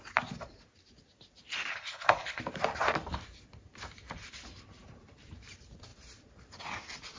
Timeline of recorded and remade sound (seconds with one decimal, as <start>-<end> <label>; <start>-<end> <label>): 0.0-1.7 recorded; 1.7-2.4 remade; 2.4-7.2 recorded